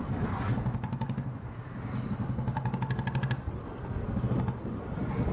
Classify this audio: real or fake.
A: real